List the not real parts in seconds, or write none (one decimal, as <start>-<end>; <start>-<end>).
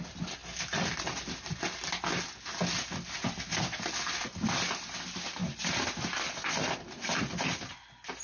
none